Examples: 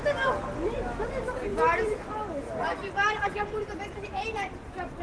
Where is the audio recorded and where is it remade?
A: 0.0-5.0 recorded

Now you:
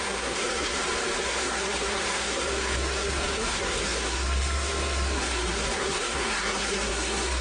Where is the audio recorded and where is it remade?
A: 0.0-0.7 remade; 0.7-1.2 recorded; 1.2-7.4 remade

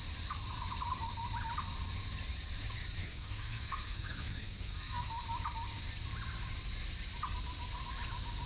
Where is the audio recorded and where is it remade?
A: 0.0-3.0 recorded; 3.0-5.1 remade; 5.1-8.5 recorded

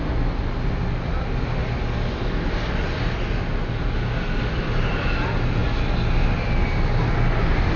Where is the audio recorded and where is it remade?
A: 0.0-7.8 recorded